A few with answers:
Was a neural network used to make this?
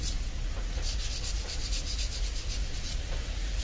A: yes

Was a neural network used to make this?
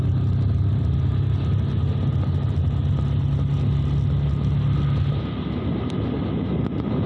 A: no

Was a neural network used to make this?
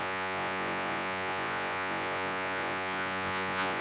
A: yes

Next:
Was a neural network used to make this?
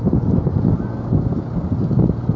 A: no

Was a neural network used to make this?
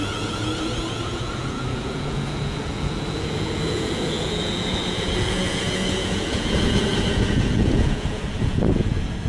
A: yes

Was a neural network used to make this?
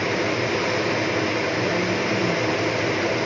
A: no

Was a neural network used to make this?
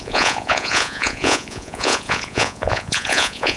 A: yes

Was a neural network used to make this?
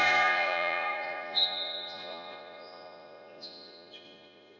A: yes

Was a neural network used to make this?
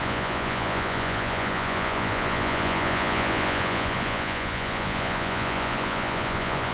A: yes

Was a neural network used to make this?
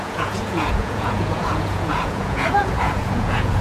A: yes